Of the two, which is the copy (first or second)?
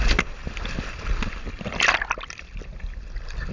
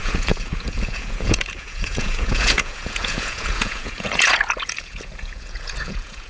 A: second